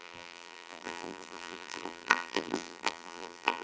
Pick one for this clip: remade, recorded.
remade